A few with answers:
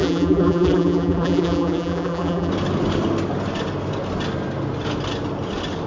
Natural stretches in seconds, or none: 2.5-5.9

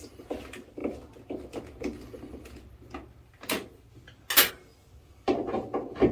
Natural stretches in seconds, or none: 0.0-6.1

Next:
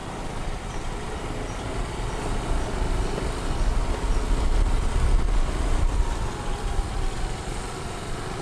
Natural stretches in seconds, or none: 2.1-8.4

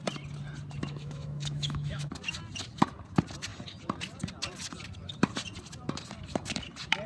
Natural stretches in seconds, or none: 0.0-0.8; 2.1-7.1